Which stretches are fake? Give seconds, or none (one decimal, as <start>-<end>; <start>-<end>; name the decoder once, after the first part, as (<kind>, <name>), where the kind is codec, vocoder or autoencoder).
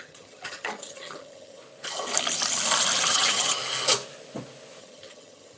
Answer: 0.0-1.6 (vocoder, HiFi-GAN); 3.1-3.6; 4.8-5.6